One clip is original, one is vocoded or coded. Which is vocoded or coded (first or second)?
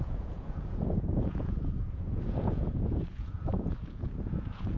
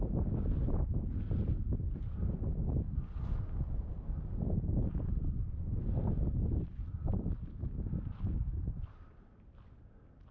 first